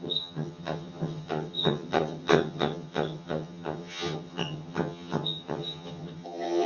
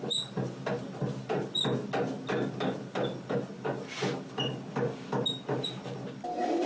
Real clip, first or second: second